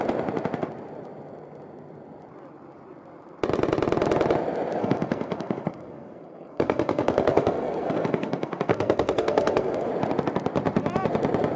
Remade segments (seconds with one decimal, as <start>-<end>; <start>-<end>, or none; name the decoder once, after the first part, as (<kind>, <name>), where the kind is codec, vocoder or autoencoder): 4.8-9.9 (codec, SNAC)